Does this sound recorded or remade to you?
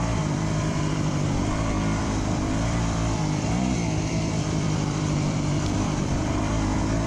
remade